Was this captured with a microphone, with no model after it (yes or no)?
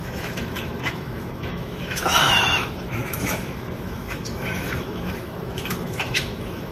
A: no